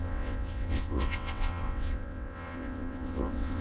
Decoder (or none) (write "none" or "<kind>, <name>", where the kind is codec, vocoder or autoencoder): vocoder, WaveNeXt